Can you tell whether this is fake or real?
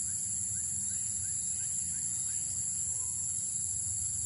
real